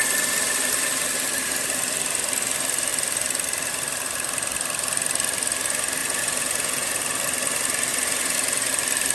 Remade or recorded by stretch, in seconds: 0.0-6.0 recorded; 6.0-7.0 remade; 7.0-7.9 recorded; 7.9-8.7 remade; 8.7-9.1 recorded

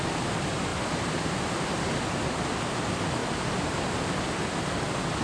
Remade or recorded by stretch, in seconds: 0.0-5.2 recorded

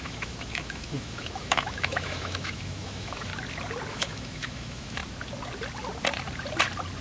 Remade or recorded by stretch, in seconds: 0.0-3.3 remade; 3.3-3.9 recorded; 3.9-5.0 remade; 5.0-7.0 recorded

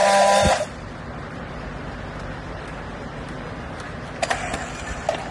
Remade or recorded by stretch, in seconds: 0.0-5.3 recorded

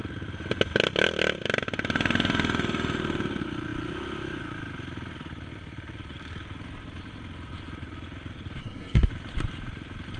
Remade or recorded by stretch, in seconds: 0.0-8.6 recorded; 8.6-9.1 remade; 9.1-10.2 recorded